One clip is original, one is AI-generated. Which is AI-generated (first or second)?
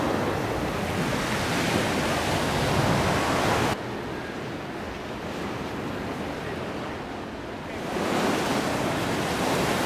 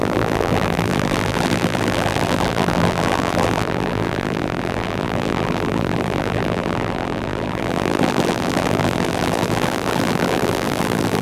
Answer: second